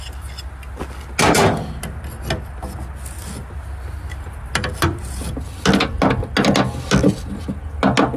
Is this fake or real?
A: real